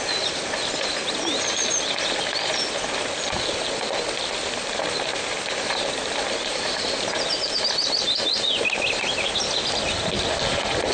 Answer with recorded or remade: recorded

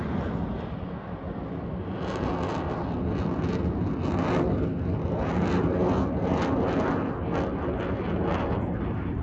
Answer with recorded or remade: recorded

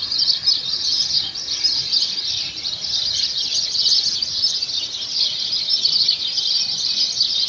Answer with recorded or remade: recorded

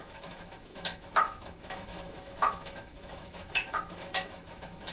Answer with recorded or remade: remade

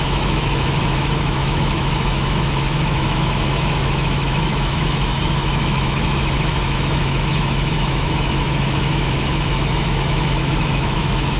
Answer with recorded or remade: remade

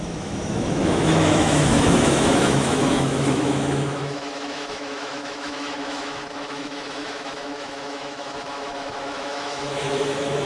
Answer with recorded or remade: remade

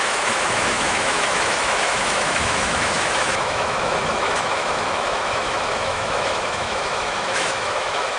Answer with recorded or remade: remade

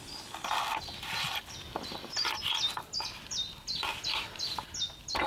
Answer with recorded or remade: recorded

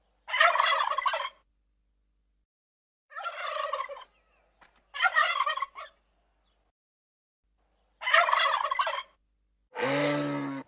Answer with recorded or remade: recorded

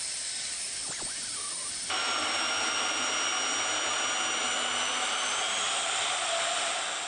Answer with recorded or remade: recorded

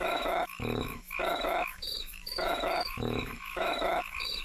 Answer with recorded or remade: remade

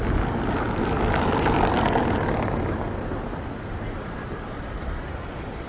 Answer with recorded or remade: recorded